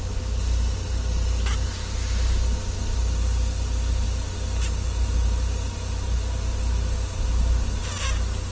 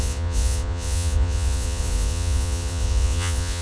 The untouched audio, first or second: first